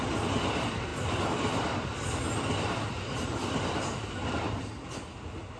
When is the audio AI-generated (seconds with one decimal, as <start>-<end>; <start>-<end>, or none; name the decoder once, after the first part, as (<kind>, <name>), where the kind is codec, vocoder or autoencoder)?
none